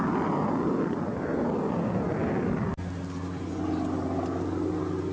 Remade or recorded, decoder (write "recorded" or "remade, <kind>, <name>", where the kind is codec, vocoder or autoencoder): recorded